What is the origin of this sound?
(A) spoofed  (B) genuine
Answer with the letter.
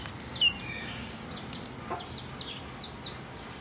B